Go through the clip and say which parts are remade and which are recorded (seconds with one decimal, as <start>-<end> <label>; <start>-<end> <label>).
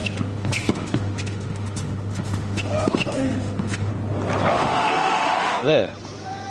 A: 0.0-3.9 remade; 3.9-4.5 recorded; 4.5-5.9 remade; 5.9-6.5 recorded